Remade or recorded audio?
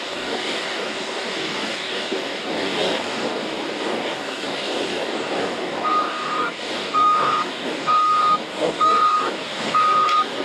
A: remade